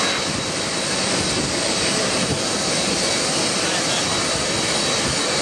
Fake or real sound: real